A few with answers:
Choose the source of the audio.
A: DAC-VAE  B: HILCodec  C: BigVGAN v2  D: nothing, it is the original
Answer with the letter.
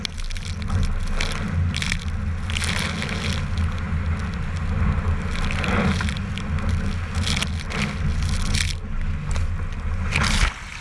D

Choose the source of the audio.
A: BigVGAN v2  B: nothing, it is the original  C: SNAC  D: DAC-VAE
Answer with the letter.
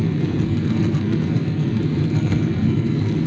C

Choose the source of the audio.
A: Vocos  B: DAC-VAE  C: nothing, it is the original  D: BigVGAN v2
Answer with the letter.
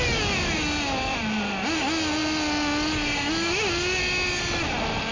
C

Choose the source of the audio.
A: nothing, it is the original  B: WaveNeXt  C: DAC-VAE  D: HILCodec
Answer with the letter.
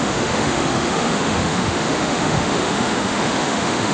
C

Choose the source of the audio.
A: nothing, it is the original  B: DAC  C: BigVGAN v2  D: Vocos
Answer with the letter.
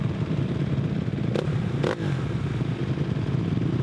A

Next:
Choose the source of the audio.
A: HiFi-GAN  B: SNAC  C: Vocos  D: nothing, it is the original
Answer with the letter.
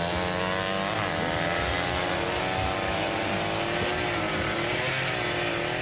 D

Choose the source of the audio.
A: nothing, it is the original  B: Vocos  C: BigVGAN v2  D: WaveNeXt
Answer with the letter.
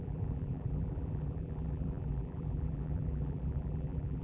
C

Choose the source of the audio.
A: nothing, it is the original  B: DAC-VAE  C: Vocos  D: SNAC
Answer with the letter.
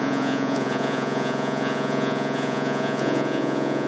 C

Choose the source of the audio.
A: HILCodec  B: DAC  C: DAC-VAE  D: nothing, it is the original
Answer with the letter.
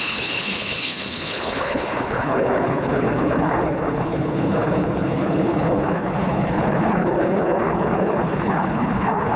A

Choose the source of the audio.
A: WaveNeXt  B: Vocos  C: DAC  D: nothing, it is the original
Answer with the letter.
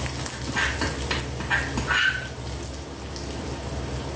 D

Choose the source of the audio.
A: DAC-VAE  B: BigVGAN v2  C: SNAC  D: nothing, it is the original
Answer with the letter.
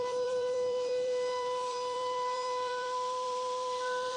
B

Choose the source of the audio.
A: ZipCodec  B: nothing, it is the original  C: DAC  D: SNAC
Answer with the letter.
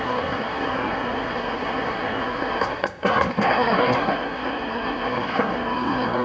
D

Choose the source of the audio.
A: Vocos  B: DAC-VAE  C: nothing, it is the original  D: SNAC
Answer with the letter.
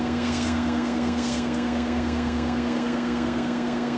D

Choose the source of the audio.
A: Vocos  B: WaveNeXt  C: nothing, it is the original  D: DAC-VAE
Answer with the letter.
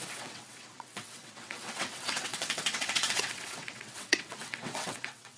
B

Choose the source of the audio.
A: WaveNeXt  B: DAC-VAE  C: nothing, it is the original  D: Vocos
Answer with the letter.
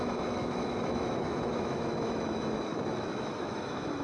B